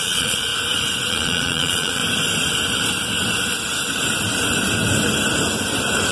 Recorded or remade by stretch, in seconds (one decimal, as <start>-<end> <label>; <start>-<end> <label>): 0.0-0.5 remade; 0.5-1.1 recorded; 1.1-2.0 remade; 2.0-6.1 recorded